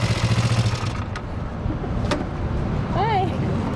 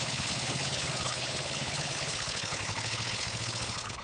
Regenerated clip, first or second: second